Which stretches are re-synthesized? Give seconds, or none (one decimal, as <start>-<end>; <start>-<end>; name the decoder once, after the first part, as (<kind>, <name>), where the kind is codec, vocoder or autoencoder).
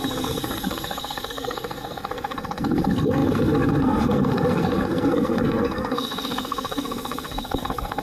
0.0-8.0 (codec, SNAC)